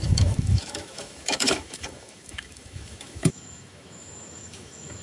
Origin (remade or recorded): remade